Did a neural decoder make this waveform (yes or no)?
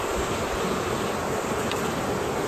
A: no